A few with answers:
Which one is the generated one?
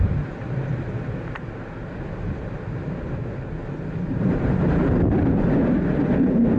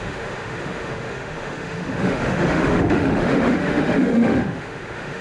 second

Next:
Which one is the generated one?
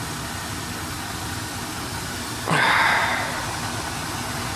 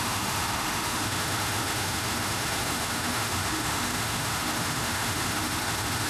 second